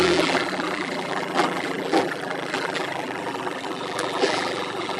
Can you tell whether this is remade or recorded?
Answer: remade